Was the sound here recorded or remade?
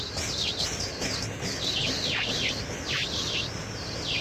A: recorded